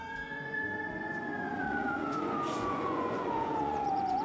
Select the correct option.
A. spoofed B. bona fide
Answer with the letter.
A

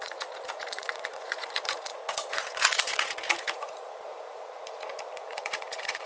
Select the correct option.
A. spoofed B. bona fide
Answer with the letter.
A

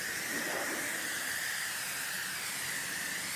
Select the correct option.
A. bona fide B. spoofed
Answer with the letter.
A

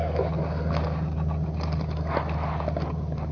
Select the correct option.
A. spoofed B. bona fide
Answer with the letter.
B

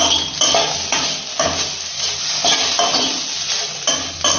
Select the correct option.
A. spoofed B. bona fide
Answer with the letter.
B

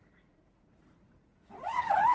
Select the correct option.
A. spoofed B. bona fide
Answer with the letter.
A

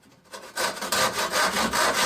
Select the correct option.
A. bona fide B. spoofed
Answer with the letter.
A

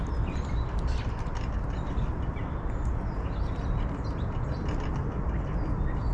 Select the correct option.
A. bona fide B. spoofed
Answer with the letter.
A